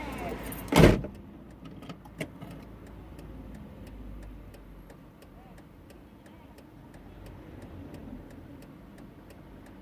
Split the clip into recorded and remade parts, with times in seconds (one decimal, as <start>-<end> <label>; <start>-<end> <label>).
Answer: 0.0-0.8 recorded; 0.8-4.5 remade; 4.5-8.0 recorded; 8.0-8.6 remade; 8.6-9.8 recorded